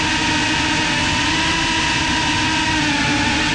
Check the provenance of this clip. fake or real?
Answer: real